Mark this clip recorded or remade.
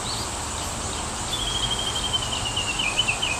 recorded